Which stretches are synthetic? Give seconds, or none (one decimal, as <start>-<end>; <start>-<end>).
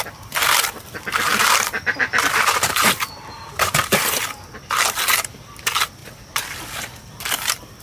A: 0.0-7.8